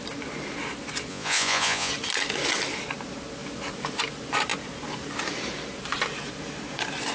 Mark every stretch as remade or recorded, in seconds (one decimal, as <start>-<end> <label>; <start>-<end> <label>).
0.0-1.1 recorded; 1.1-1.9 remade; 1.9-7.1 recorded